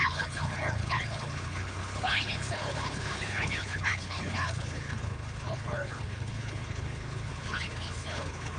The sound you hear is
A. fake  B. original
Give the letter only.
A